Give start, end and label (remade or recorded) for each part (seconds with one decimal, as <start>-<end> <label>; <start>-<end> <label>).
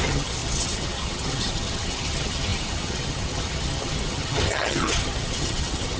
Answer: 0.0-6.0 remade